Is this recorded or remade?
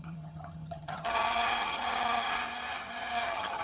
remade